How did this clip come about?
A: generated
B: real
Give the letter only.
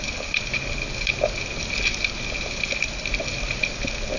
B